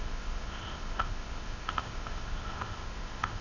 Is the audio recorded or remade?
remade